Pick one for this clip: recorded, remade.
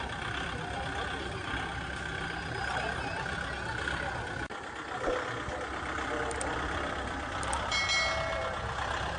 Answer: recorded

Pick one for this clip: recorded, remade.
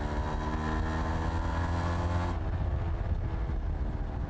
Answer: recorded